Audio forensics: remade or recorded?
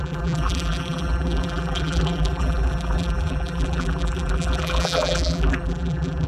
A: remade